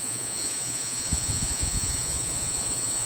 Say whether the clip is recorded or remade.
remade